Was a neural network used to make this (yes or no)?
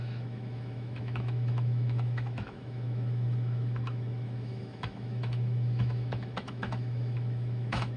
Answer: yes